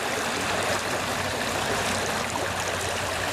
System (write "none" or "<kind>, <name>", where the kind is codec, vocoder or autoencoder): none